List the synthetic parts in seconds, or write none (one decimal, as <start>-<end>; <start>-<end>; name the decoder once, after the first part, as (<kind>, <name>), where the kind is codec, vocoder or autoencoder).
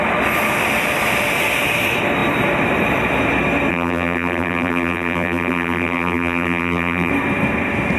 3.7-7.1 (vocoder, BigVGAN v2)